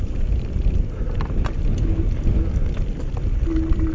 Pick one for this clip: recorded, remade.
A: recorded